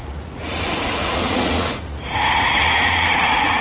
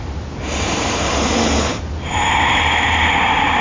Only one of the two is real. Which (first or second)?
second